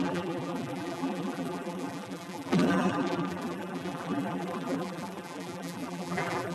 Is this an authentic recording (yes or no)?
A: no